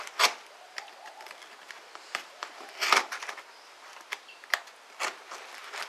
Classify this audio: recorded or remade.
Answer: recorded